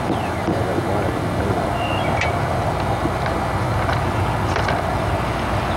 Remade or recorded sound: recorded